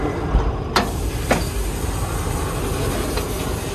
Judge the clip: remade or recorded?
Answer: recorded